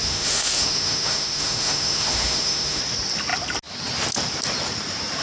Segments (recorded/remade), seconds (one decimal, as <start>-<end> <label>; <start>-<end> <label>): 0.0-2.8 remade; 2.8-5.2 recorded